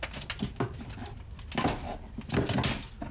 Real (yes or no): yes